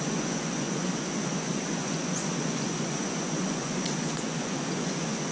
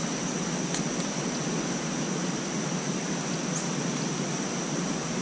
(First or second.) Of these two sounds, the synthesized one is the first